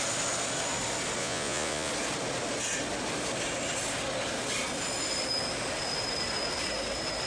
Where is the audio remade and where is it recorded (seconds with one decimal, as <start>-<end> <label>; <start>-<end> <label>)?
0.0-1.2 recorded; 1.2-1.9 remade; 1.9-7.3 recorded